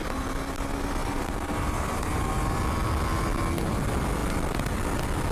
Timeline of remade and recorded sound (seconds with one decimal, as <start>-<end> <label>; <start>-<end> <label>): 0.0-1.0 recorded; 1.0-2.6 remade; 2.6-5.3 recorded